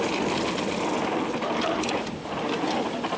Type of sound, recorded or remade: recorded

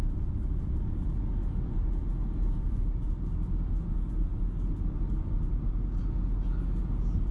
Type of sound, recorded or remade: recorded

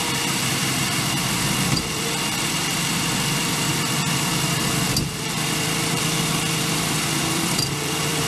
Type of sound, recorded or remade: remade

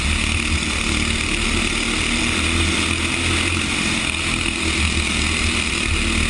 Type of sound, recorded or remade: recorded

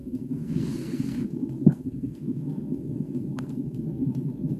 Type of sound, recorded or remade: remade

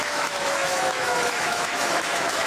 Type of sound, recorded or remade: remade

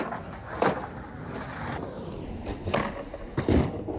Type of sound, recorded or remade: recorded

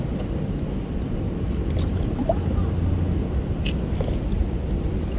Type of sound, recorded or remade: recorded